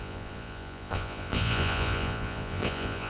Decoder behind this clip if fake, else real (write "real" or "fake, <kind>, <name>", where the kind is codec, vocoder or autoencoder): fake, vocoder, Vocos